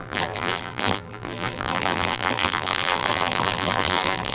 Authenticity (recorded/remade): remade